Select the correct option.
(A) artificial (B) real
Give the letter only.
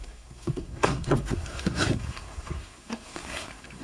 A